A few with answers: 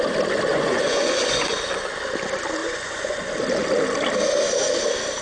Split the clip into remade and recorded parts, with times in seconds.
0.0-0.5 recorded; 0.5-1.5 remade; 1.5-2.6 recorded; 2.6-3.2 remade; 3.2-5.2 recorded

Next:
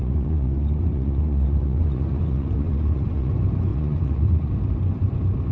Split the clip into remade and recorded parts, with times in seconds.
0.0-3.3 remade; 3.3-3.7 recorded; 3.7-4.5 remade; 4.5-5.5 recorded

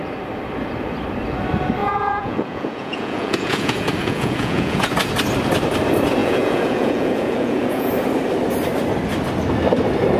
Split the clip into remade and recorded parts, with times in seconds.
0.0-1.8 recorded; 1.8-4.9 remade; 4.9-6.2 recorded; 6.2-7.9 remade; 7.9-10.2 recorded

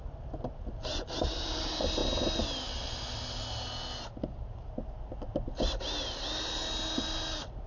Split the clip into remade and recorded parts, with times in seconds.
0.0-7.7 recorded

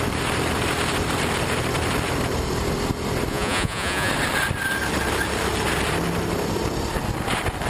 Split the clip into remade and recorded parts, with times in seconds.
0.0-3.3 recorded; 3.3-4.1 remade; 4.1-7.7 recorded